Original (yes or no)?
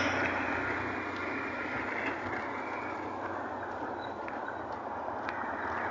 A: yes